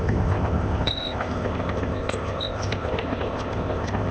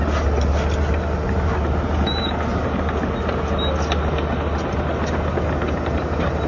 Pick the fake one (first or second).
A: first